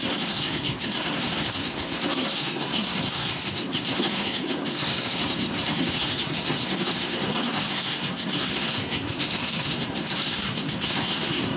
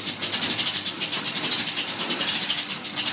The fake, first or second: first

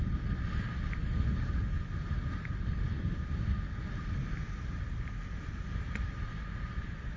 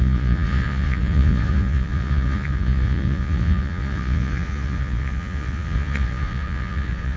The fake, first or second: second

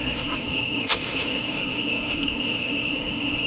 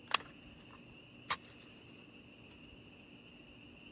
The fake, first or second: first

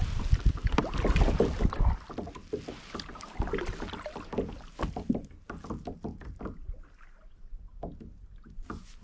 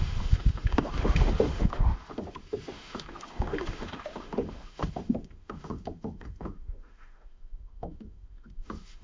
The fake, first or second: second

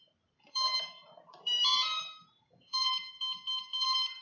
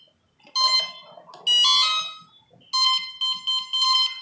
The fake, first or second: first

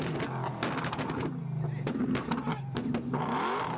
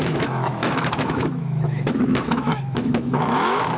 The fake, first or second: second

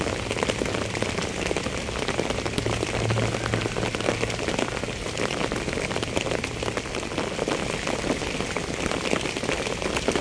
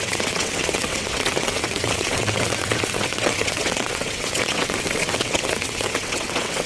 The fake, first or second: second